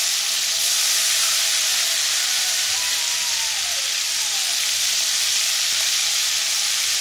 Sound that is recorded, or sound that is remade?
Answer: recorded